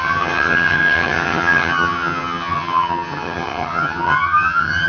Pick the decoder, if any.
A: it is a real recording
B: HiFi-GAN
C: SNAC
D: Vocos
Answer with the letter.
B